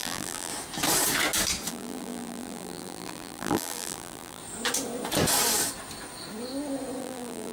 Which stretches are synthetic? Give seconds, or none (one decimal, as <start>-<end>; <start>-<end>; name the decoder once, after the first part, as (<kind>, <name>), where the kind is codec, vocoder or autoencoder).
0.0-0.5 (vocoder, BigVGAN v2); 1.7-4.4; 7.0-7.5